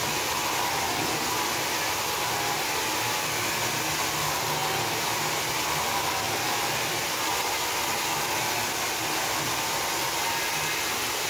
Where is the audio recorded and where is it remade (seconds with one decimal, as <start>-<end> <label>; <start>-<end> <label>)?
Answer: 0.0-11.3 recorded